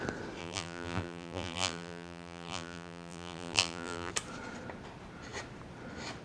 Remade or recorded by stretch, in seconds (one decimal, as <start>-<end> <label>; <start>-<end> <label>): 0.0-0.4 recorded; 0.4-4.1 remade; 4.1-6.2 recorded